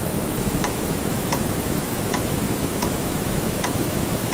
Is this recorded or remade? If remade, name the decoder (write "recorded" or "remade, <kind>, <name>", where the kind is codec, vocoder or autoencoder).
remade, autoencoder, DAC-VAE